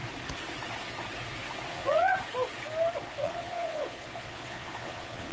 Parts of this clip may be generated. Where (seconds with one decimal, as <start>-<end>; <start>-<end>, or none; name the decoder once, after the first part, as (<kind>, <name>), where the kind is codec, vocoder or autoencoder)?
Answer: 1.7-2.1 (vocoder, Vocos); 3.1-5.3